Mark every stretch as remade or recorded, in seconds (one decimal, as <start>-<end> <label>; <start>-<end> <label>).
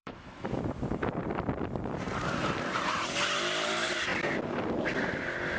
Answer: 0.0-0.6 remade; 0.6-5.6 recorded